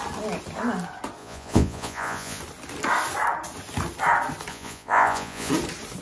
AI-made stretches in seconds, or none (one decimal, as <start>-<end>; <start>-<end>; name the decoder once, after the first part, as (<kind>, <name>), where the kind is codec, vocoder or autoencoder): 1.2-2.4 (vocoder, Vocos); 4.5-5.5